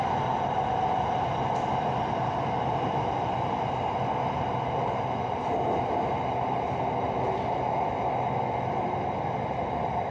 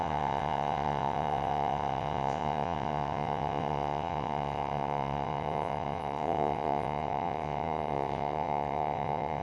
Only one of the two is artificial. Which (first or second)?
second